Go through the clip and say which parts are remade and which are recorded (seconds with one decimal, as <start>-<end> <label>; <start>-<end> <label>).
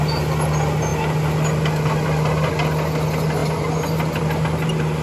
0.0-5.0 recorded